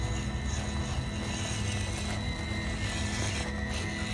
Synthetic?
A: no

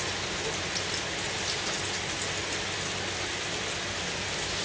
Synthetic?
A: no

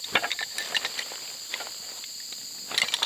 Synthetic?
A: no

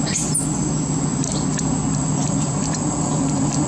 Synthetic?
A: no